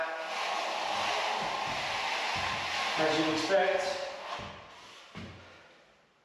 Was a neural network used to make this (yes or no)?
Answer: no